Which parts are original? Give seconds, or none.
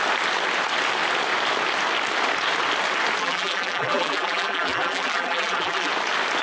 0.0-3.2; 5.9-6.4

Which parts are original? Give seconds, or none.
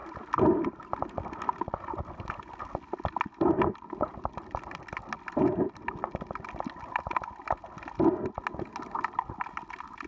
0.0-10.1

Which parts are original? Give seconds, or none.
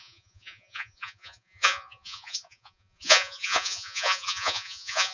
none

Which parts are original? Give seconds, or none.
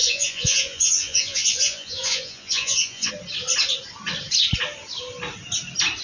3.1-6.0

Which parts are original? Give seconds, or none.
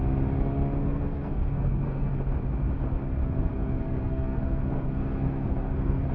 0.0-0.8; 2.1-3.2